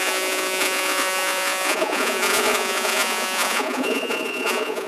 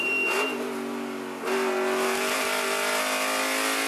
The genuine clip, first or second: second